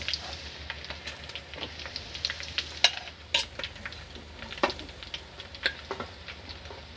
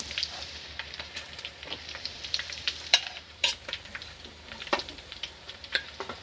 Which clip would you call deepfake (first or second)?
second